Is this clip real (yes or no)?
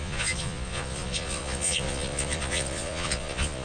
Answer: no